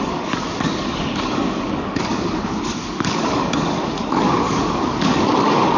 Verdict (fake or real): fake